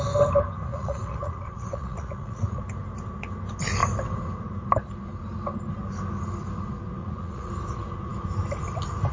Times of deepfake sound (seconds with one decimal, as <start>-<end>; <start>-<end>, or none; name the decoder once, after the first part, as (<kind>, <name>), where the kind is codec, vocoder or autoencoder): 0.7-2.6 (vocoder, Vocos); 7.0-7.5